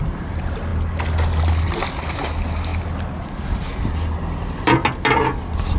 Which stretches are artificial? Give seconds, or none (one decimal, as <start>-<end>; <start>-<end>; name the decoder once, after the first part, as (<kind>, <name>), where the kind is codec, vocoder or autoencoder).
none